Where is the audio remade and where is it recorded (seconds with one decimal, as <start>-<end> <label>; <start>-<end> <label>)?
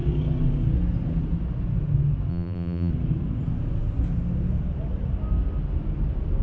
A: 0.0-2.3 recorded; 2.3-2.9 remade; 2.9-6.4 recorded